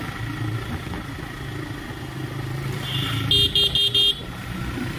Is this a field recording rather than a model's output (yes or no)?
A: yes